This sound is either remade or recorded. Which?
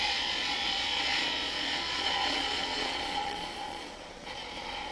remade